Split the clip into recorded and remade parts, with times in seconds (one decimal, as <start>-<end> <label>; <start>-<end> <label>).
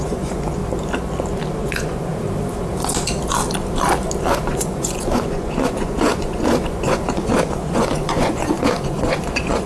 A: 0.0-0.6 remade; 0.6-1.6 recorded; 1.6-2.1 remade; 2.1-4.3 recorded; 4.3-9.7 remade